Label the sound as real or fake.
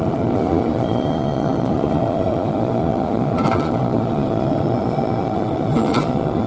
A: fake